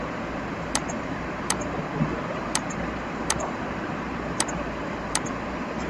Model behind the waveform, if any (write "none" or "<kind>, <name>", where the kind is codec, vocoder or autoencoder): vocoder, BigVGAN v2